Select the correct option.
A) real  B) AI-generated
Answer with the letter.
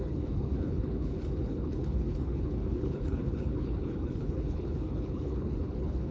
B